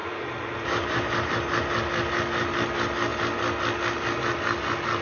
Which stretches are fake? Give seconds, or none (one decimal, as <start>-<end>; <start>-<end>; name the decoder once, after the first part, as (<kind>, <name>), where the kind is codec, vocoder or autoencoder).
0.0-1.3 (vocoder, BigVGAN v2)